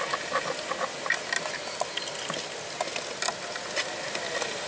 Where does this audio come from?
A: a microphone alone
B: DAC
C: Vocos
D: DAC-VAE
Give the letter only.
A